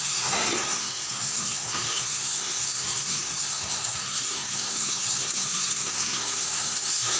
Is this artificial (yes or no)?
yes